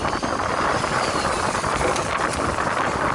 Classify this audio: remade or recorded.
recorded